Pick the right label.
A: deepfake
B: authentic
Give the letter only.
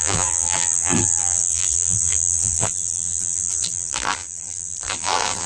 A